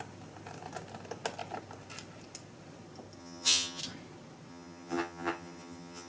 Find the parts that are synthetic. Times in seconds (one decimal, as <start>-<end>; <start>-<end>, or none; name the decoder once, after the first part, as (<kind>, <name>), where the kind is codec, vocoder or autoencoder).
3.2-3.8 (vocoder, HiFi-GAN); 4.5-6.1